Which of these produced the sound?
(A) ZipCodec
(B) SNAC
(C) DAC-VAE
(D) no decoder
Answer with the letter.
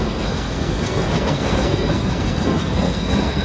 B